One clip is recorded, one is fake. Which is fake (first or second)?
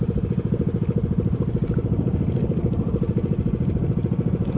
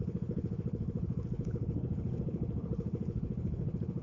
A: second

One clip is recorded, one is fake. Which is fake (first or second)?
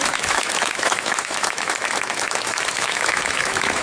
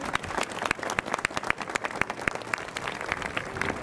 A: first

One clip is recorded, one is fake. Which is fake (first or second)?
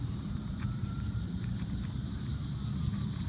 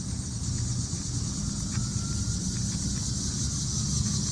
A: first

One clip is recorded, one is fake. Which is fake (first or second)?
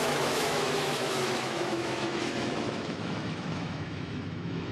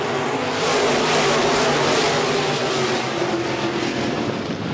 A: first